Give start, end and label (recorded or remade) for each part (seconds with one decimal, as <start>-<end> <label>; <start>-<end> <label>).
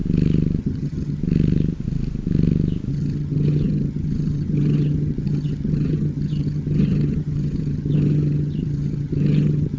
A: 0.0-0.6 recorded; 0.6-1.2 remade; 1.2-2.9 recorded; 2.9-9.8 remade